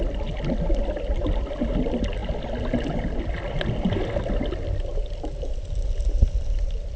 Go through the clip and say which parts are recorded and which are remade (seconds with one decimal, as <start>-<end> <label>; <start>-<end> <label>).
0.0-7.0 recorded